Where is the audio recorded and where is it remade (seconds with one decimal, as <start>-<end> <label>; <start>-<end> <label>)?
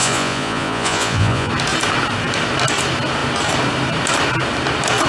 0.0-1.5 remade; 1.5-5.1 recorded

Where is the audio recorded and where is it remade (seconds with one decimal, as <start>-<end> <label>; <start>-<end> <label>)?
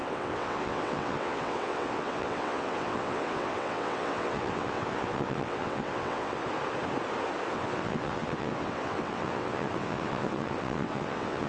0.0-6.4 remade; 6.4-7.5 recorded; 7.5-11.5 remade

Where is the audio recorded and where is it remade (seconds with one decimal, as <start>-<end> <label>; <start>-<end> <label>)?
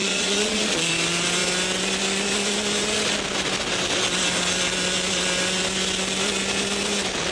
0.0-0.9 remade; 0.9-7.3 recorded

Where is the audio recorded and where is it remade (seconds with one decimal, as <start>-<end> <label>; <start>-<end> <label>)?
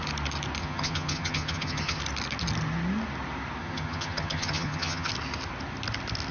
0.0-0.6 recorded; 0.6-2.0 remade; 2.0-3.6 recorded; 3.6-5.1 remade; 5.1-6.3 recorded